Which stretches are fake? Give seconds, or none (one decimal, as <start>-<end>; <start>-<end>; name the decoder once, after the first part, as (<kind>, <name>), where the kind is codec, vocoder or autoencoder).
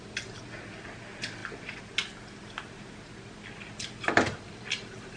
none